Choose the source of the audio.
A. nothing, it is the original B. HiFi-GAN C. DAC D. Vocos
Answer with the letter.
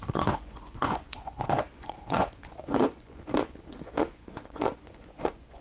D